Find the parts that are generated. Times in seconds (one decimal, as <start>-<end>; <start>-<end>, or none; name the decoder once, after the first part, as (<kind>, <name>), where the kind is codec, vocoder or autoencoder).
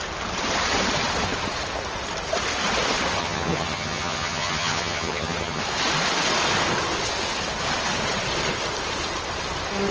3.2-5.6 (vocoder, HiFi-GAN)